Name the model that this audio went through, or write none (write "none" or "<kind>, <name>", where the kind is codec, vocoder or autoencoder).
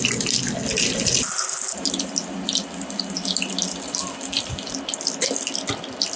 none